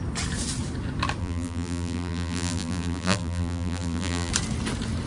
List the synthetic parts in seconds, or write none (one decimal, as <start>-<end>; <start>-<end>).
1.2-4.3